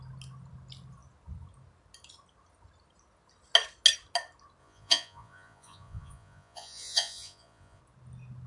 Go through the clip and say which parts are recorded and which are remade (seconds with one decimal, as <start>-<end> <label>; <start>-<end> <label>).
0.0-4.6 recorded; 4.6-7.8 remade; 7.8-8.5 recorded